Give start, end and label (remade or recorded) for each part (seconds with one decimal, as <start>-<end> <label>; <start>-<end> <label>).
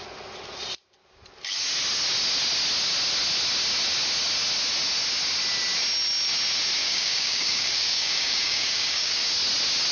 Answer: 0.0-6.8 recorded; 6.8-9.2 remade; 9.2-9.9 recorded